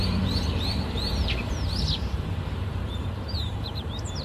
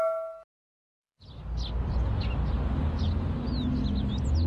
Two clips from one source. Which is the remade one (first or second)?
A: first